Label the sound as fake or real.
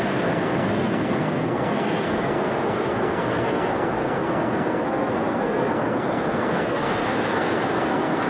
fake